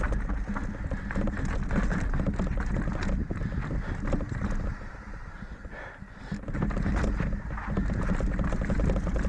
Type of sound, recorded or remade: recorded